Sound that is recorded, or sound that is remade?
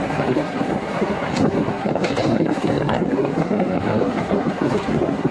remade